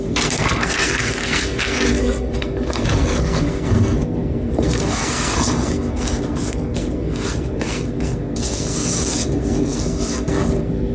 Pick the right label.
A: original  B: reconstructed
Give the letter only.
B